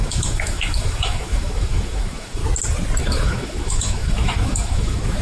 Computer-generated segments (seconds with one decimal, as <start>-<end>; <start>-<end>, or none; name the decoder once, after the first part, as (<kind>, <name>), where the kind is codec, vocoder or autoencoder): 0.0-2.4 (autoencoder, DAC-VAE); 3.0-5.2